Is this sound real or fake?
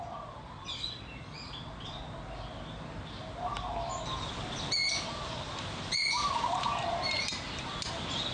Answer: real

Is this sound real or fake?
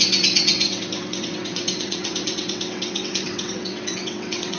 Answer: fake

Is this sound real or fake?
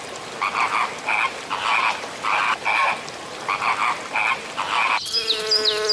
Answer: real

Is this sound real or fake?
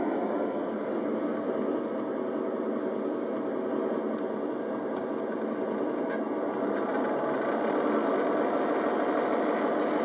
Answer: real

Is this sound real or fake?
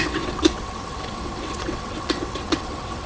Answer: fake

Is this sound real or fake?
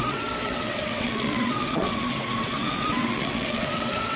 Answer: fake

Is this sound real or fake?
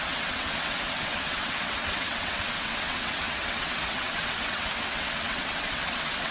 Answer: fake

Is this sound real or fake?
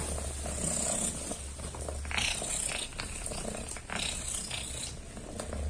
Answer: real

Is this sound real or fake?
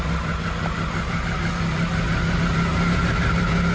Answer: real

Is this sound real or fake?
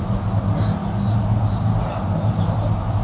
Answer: real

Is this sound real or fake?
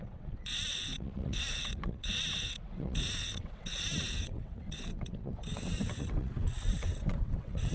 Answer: fake